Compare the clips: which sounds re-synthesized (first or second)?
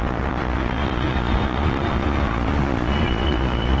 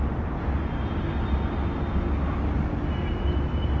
first